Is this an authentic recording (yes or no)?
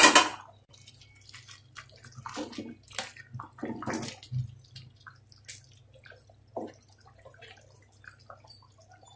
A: yes